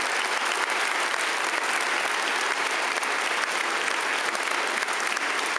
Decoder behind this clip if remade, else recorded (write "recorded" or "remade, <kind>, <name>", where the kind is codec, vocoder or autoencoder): recorded